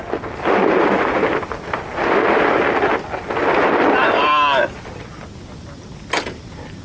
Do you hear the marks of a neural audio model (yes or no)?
no